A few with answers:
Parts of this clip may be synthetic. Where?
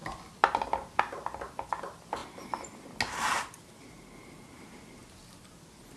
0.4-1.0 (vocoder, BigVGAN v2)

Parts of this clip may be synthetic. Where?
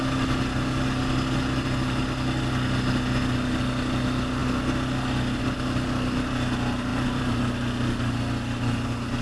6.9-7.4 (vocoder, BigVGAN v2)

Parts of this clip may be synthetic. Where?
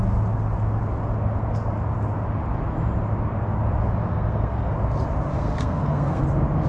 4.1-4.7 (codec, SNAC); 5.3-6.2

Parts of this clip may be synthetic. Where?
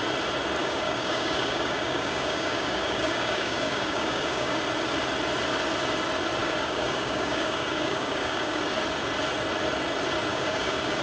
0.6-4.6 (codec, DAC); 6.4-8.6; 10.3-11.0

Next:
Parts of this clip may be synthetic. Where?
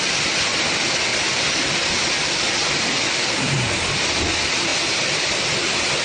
none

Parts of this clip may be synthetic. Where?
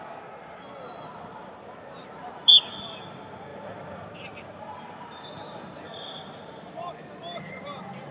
1.4-2.5 (vocoder, BigVGAN v2); 3.5-6.7